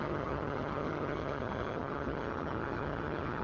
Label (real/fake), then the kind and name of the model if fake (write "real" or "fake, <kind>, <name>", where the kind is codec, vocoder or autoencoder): fake, vocoder, HiFi-GAN